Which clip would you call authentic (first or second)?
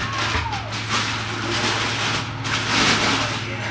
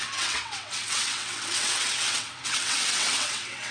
first